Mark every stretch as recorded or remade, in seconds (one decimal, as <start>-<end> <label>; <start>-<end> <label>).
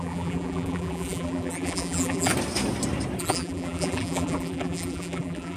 0.0-2.3 remade; 2.3-3.2 recorded; 3.2-5.6 remade